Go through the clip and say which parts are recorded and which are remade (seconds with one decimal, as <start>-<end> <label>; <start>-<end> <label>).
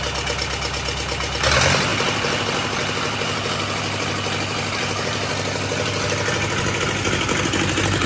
0.0-1.9 recorded; 1.9-6.8 remade; 6.8-8.1 recorded